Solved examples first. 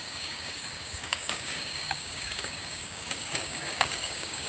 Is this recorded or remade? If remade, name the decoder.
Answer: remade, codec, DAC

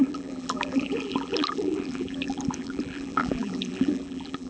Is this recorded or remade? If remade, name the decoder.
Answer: remade, vocoder, BigVGAN v2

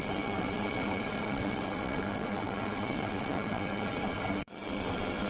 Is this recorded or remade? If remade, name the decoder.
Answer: remade, vocoder, WaveNeXt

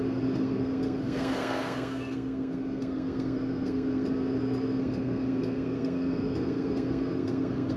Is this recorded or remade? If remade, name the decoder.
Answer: remade, codec, SNAC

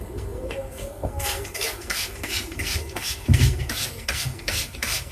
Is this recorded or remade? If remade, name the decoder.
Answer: remade, codec, SNAC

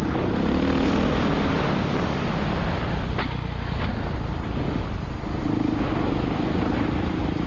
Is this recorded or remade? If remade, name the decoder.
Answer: recorded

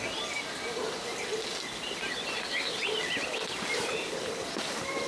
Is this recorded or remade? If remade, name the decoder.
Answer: recorded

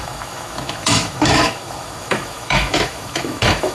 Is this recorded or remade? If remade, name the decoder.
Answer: remade, autoencoder, DAC-VAE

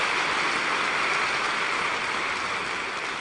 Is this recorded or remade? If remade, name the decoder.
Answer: recorded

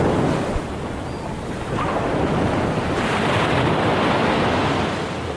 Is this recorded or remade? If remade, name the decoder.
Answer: recorded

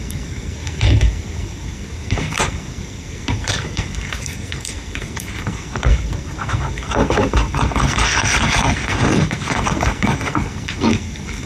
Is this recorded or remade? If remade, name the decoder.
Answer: remade, codec, SNAC